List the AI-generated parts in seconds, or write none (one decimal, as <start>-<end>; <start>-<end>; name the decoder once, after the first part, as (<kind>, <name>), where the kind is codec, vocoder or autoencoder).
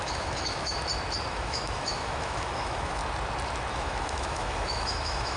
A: 0.0-0.8 (autoencoder, DAC-VAE); 1.3-3.0; 3.7-5.4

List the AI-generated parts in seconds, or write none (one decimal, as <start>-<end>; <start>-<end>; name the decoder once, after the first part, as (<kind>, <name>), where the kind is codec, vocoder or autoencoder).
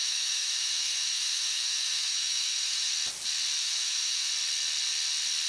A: 0.0-2.9 (autoencoder, DAC-VAE); 3.6-4.3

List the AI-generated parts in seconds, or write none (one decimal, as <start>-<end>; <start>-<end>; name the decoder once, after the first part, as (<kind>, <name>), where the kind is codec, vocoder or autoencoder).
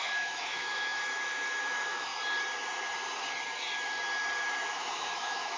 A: 0.0-2.1 (autoencoder, DAC-VAE); 4.4-5.6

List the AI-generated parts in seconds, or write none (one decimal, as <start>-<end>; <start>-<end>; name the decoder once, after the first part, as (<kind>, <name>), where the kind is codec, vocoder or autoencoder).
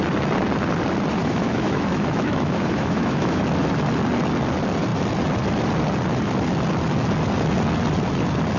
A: 1.2-3.4 (autoencoder, DAC-VAE)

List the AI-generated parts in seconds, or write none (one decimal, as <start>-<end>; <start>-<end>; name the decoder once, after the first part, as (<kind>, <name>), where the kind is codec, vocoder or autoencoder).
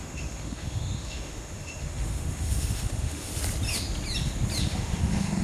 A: 0.0-3.3 (autoencoder, DAC-VAE); 4.6-5.4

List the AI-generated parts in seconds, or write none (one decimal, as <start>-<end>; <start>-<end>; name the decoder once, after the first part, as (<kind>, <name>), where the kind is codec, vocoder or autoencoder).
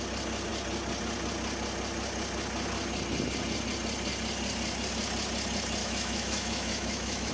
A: 5.8-7.3 (autoencoder, DAC-VAE)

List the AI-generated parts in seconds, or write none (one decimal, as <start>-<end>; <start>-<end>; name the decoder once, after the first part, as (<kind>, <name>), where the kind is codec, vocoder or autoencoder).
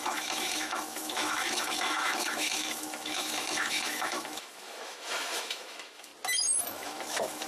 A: 0.0-6.1 (autoencoder, DAC-VAE); 6.6-7.5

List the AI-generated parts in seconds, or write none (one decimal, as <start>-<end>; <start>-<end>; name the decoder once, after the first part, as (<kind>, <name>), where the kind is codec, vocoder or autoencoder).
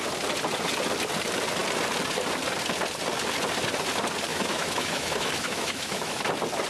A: 4.3-6.2 (autoencoder, DAC-VAE)